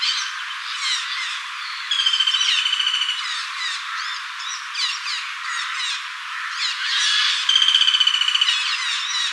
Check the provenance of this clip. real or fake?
real